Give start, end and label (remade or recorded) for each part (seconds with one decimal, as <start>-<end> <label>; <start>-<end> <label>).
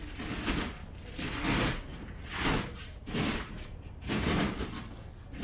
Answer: 0.0-1.9 recorded; 1.9-4.6 remade; 4.6-5.4 recorded